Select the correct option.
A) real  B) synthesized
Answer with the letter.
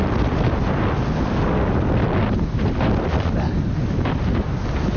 A